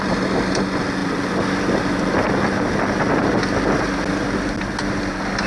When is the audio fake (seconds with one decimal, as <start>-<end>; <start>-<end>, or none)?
none